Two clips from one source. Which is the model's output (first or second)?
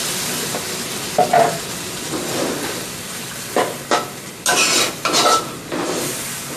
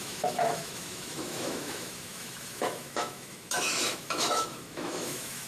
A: second